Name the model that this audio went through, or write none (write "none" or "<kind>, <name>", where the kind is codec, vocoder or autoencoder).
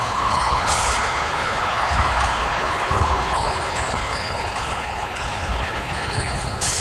codec, HILCodec